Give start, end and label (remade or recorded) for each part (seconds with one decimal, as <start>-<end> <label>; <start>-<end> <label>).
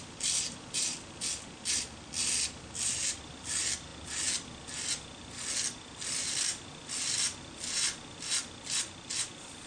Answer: 0.0-9.7 recorded